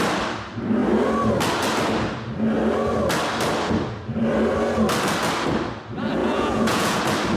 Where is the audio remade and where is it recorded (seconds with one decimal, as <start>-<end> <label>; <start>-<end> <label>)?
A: 0.0-6.2 recorded; 6.2-7.0 remade; 7.0-7.4 recorded